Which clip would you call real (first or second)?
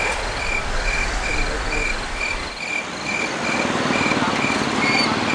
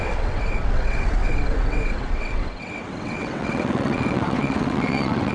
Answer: first